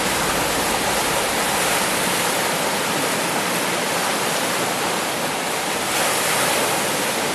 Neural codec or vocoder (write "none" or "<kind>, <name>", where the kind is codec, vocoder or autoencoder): none